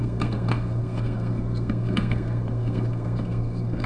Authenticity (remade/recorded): remade